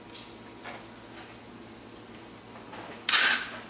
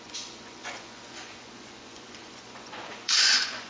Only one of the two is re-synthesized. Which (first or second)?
second